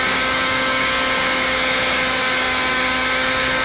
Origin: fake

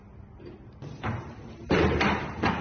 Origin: fake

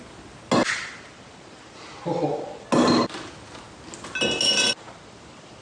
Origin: real